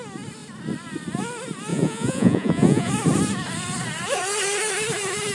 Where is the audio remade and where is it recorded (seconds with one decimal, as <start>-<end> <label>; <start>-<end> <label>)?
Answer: 0.0-1.7 recorded; 1.7-2.9 remade; 2.9-5.3 recorded